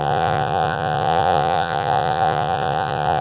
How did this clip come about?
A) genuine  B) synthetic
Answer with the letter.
B